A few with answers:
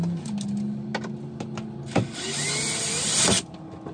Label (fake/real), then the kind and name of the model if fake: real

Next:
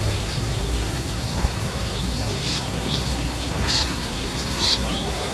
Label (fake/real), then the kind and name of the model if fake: fake, codec, SNAC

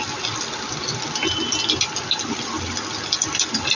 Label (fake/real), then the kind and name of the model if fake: real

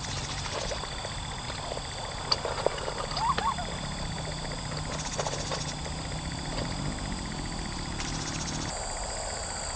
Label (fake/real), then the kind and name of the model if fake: real